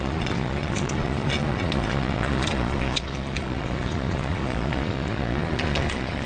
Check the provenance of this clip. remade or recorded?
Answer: remade